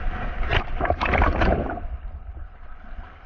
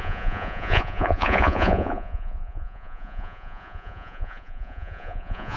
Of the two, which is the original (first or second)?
first